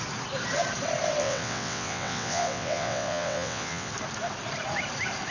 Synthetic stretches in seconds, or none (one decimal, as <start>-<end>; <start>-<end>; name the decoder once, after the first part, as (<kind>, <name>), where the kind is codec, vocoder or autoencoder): 1.2-3.9 (vocoder, WaveNeXt)